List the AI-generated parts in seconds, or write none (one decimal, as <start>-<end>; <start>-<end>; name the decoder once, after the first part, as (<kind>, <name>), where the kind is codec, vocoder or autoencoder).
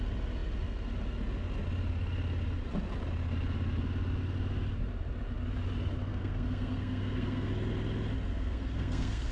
6.1-7.5 (codec, SNAC); 8.3-9.3